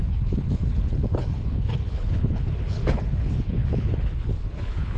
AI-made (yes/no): yes